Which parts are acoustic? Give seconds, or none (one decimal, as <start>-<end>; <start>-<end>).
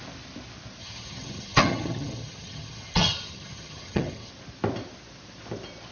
0.0-0.8; 4.3-5.9